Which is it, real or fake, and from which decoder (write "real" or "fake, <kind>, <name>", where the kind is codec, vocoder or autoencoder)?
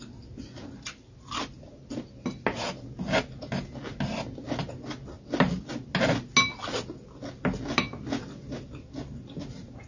real